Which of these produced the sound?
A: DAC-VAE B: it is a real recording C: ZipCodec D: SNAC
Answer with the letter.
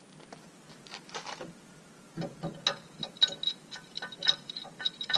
B